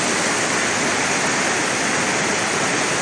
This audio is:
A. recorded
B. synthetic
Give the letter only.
A